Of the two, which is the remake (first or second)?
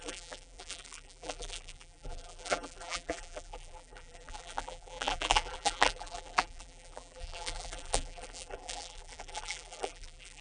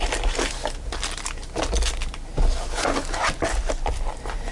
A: first